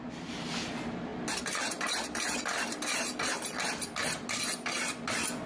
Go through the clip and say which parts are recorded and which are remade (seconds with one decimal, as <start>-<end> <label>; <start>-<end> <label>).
0.0-5.5 recorded